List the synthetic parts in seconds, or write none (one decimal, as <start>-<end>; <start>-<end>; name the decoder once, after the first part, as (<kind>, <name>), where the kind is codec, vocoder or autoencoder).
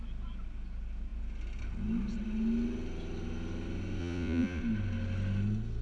4.0-4.6 (vocoder, Vocos)